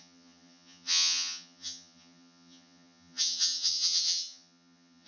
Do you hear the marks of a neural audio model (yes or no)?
yes